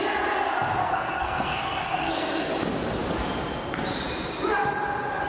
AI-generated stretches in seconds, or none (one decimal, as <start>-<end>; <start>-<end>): 0.8-2.5